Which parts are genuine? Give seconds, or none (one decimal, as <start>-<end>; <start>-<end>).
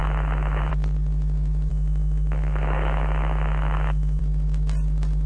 0.7-1.7; 4.2-5.3